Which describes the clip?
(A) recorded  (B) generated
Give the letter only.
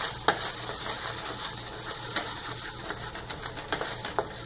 A